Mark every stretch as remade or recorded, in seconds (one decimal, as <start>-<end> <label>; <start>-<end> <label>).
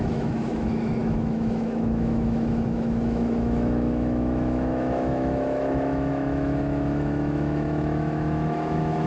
0.0-9.1 remade